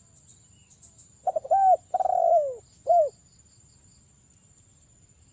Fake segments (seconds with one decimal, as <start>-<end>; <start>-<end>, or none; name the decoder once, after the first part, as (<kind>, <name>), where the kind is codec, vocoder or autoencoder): none